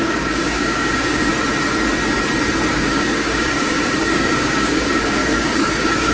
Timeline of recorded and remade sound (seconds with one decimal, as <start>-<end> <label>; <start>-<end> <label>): 0.0-1.3 remade; 1.3-2.7 recorded; 2.7-6.1 remade

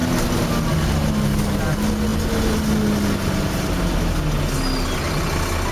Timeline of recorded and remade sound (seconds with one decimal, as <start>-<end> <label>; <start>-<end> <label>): 0.0-5.7 recorded

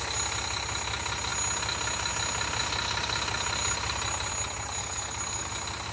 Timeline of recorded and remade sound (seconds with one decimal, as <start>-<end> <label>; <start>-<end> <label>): 0.0-4.8 recorded; 4.8-5.5 remade; 5.5-5.9 recorded

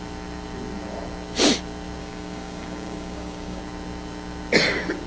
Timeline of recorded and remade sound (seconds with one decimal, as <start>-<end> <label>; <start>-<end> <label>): 0.0-2.0 recorded; 2.0-3.6 remade; 3.6-5.1 recorded

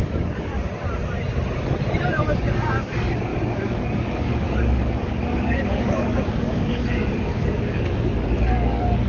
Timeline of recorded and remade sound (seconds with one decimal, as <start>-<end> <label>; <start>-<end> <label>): 0.0-0.5 remade; 0.5-2.1 recorded; 2.1-9.1 remade

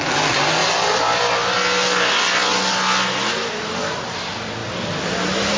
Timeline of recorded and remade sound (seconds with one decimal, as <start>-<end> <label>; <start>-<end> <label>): 0.0-5.6 recorded

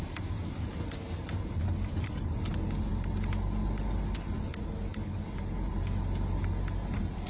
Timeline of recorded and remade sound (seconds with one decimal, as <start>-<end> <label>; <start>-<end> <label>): 0.0-7.3 recorded

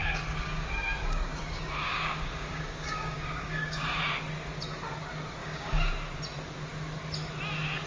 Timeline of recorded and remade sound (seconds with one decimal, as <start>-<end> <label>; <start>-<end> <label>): 0.0-4.0 remade; 4.0-5.4 recorded; 5.4-5.9 remade; 5.9-7.9 recorded